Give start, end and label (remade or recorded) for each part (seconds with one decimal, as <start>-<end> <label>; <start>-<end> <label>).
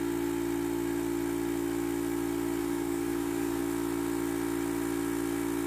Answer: 0.0-2.6 recorded; 2.6-3.6 remade; 3.6-5.7 recorded